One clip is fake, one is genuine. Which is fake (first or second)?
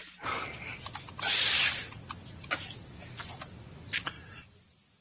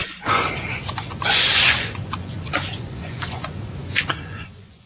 second